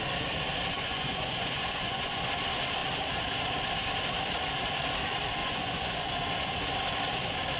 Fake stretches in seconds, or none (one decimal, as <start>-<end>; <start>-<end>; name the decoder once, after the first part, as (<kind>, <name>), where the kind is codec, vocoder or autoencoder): 0.7-2.2 (vocoder, Vocos); 5.4-6.1